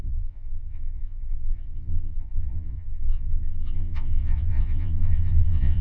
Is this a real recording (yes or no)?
no